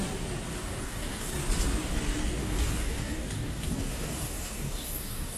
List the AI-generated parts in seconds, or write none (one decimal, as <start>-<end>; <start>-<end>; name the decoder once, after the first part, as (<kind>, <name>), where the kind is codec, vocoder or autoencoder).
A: 0.5-1.3 (codec, DAC); 2.4-5.4